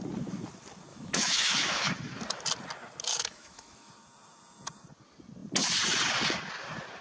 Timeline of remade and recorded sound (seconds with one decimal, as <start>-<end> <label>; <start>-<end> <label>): 0.0-0.9 recorded; 0.9-1.9 remade; 1.9-3.1 recorded; 3.1-3.9 remade; 3.9-7.0 recorded